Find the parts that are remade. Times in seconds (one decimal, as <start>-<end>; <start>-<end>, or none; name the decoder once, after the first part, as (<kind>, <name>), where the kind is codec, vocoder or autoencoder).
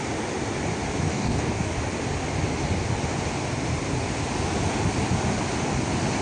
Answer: 1.1-1.8 (codec, DAC)